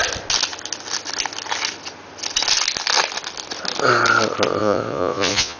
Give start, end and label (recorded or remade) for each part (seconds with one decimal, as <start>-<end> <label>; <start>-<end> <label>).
0.0-4.6 recorded; 4.6-5.6 remade